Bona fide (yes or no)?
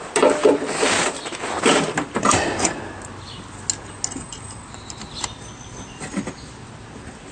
yes